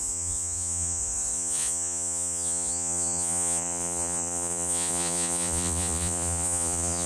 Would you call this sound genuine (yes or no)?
no